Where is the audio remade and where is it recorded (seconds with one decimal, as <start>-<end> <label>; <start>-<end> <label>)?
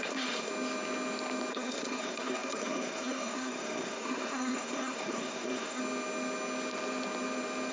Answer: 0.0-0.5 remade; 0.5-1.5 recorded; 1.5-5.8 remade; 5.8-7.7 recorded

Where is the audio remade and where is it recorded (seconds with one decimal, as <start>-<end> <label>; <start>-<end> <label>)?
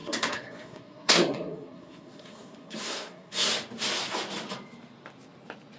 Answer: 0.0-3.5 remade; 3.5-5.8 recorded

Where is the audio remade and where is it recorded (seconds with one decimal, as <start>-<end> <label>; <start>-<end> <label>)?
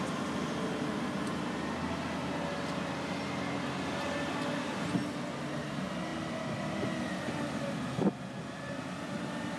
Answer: 0.0-9.6 recorded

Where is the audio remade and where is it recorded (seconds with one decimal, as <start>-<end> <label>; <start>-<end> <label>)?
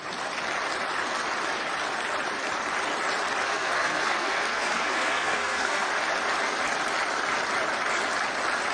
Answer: 0.0-3.4 recorded; 3.4-5.9 remade; 5.9-8.7 recorded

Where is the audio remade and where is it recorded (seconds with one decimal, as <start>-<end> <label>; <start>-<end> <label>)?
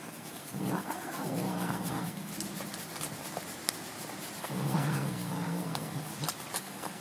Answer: 0.0-2.3 remade; 2.3-4.4 recorded; 4.4-6.1 remade; 6.1-6.6 recorded; 6.6-7.0 remade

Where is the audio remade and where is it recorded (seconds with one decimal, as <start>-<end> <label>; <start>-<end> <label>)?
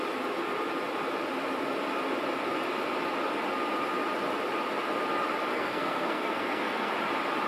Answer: 0.0-5.5 recorded; 5.5-6.9 remade; 6.9-7.5 recorded